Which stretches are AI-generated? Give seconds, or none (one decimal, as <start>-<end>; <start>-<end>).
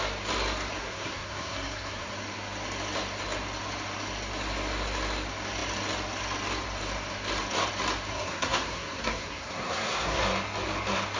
0.8-2.1; 8.1-10.2